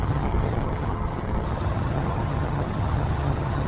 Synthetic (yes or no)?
yes